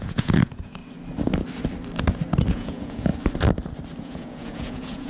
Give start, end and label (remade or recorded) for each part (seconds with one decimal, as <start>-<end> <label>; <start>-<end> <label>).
0.0-0.8 remade; 0.8-2.5 recorded; 2.5-3.1 remade; 3.1-4.0 recorded; 4.0-5.1 remade